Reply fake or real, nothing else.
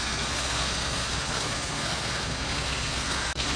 fake